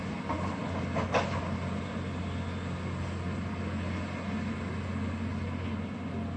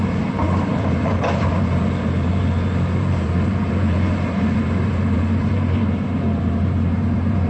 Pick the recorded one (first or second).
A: first